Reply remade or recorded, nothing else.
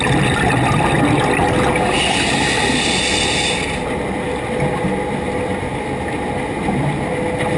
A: recorded